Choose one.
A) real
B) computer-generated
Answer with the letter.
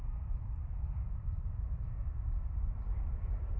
A